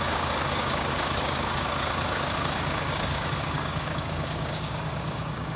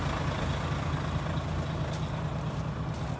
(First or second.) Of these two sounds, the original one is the second